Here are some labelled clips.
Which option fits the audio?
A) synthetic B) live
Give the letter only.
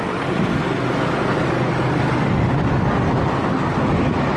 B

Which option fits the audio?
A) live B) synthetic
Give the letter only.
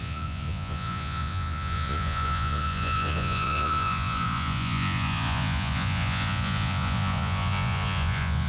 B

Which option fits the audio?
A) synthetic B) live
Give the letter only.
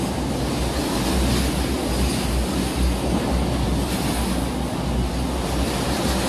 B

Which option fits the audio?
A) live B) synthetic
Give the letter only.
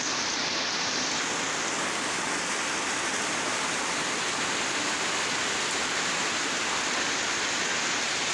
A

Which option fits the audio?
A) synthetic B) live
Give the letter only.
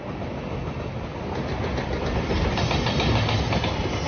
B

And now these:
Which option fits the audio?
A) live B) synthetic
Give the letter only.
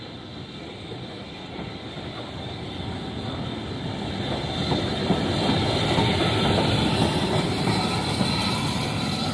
A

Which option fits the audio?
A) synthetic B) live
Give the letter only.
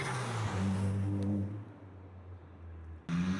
B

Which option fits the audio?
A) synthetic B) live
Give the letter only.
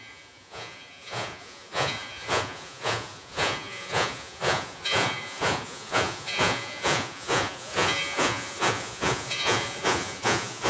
A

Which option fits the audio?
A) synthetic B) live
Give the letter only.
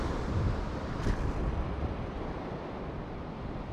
A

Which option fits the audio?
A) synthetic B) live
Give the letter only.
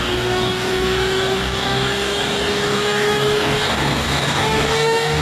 A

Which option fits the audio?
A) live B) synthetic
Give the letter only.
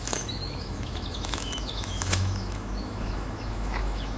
B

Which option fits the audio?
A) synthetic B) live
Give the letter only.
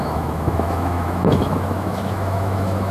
A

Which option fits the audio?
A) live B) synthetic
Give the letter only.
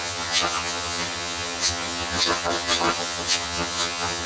B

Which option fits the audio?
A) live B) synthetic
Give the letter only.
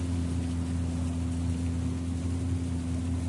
A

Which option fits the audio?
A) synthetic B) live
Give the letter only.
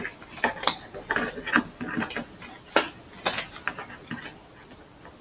B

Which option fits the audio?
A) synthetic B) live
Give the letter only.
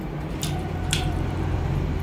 A